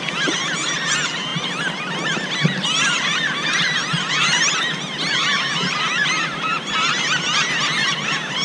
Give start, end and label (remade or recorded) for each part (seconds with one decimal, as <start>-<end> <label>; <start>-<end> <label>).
0.0-8.4 recorded